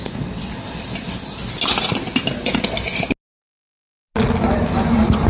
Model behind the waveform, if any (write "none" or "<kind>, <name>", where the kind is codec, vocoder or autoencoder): none